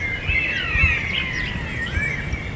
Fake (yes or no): no